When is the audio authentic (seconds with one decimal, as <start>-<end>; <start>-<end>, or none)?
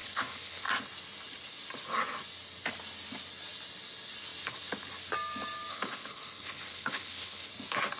0.6-5.7; 7.5-8.0